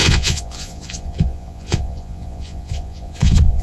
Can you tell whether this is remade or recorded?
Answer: remade